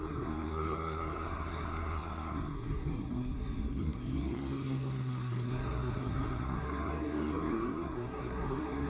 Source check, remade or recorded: remade